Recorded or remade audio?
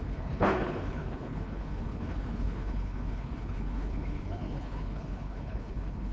remade